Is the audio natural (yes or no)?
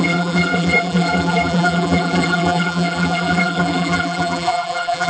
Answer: no